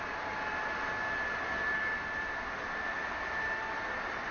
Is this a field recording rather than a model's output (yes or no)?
yes